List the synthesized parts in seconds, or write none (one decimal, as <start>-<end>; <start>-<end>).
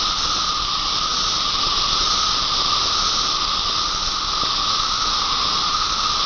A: none